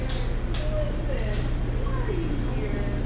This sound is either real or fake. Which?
real